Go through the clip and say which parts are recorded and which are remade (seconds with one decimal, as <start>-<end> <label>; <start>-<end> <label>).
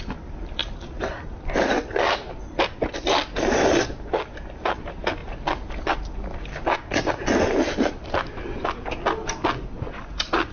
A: 0.0-5.2 remade; 5.2-7.4 recorded; 7.4-10.5 remade